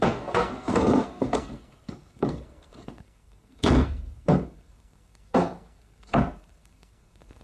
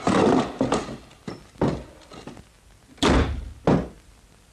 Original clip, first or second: second